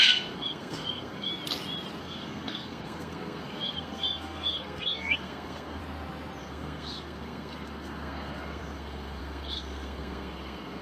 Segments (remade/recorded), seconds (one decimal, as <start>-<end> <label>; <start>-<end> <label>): 0.0-1.3 remade; 1.3-2.0 recorded; 2.0-5.8 remade; 5.8-6.4 recorded; 6.4-10.8 remade